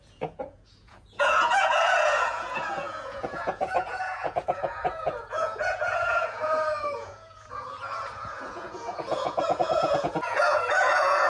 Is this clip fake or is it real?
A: fake